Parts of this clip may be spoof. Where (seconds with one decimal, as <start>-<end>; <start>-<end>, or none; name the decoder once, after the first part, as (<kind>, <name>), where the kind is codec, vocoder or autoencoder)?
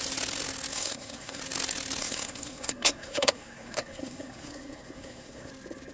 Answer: 0.7-1.4 (codec, SNAC); 2.0-5.5